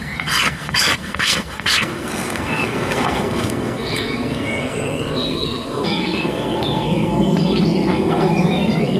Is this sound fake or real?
fake